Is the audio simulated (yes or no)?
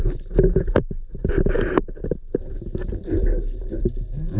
no